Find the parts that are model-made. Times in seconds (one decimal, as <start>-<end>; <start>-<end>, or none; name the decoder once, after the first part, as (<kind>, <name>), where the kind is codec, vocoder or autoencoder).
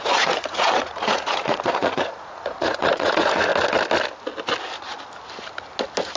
0.0-3.5 (vocoder, Vocos)